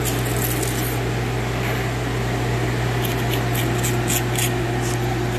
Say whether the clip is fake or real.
real